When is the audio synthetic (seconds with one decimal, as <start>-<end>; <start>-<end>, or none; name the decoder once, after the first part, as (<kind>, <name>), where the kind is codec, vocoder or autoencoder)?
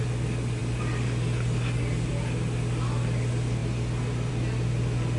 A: none